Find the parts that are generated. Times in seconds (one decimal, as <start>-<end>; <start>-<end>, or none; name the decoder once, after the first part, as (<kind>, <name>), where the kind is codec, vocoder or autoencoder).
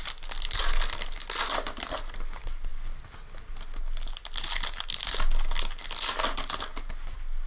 none